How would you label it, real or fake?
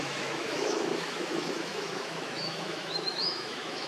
fake